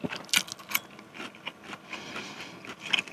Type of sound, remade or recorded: recorded